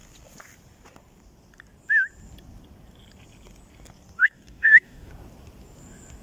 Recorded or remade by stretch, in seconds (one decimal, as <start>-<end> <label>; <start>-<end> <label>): 0.0-4.2 recorded; 4.2-5.1 remade; 5.1-6.2 recorded